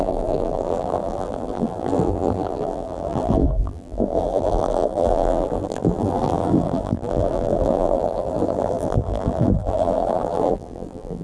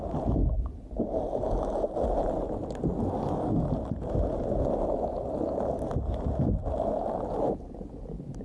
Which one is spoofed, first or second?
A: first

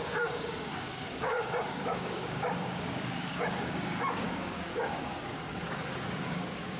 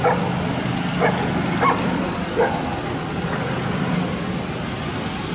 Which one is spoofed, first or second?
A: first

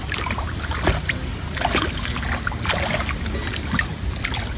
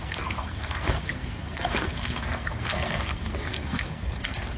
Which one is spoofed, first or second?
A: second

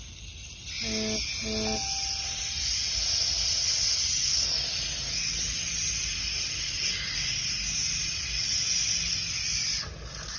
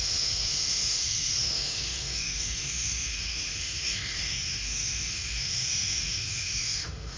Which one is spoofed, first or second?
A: second